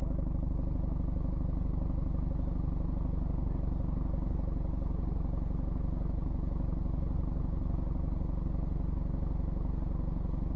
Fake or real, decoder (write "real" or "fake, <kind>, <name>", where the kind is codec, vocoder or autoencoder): real